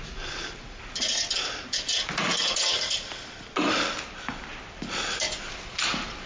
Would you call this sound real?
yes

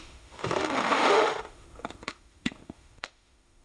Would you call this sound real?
no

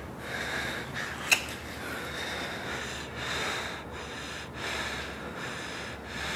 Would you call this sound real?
yes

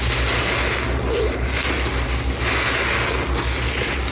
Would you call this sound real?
yes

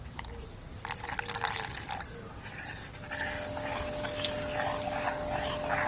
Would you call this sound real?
yes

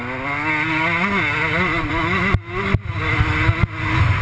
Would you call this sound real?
yes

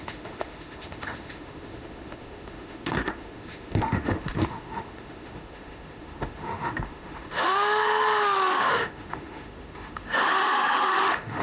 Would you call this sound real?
no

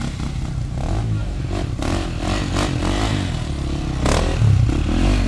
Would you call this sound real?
yes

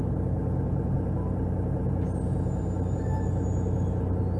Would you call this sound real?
yes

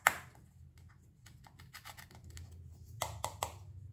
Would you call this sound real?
yes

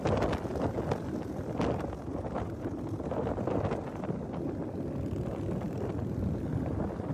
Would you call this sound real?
yes